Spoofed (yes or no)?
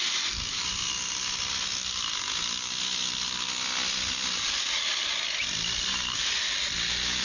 no